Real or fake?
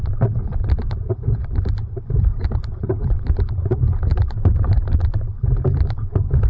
fake